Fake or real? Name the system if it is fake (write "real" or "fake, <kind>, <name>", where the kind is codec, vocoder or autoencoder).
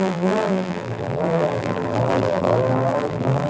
fake, vocoder, BigVGAN v2